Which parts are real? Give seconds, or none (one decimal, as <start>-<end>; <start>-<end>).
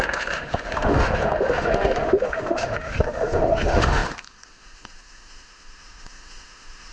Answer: none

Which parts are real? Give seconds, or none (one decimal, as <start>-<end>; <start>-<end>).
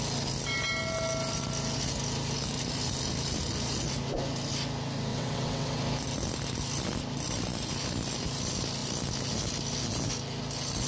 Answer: 0.0-5.1; 5.8-10.9